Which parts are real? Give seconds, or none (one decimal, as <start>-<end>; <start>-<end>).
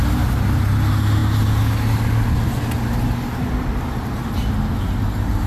0.0-5.5